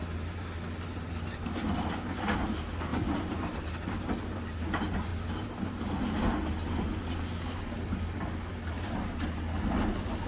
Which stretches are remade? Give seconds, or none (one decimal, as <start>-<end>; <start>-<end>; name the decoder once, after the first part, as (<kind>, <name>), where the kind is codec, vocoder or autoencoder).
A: none